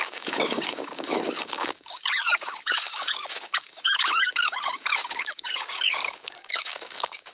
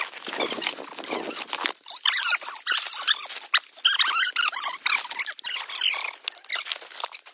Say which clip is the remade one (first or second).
first